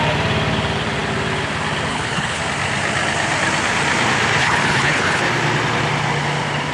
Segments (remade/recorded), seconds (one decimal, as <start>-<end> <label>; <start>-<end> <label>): 0.0-1.9 recorded; 1.9-2.4 remade; 2.4-4.4 recorded; 4.4-5.2 remade; 5.2-6.7 recorded